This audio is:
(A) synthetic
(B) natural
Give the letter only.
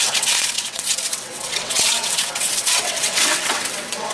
A